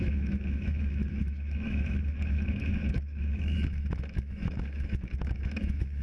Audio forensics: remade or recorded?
remade